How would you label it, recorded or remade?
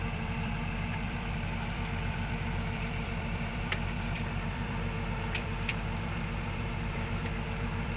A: remade